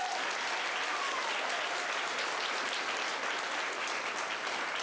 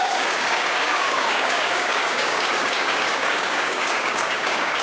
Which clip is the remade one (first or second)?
second